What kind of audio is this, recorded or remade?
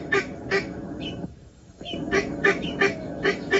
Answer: remade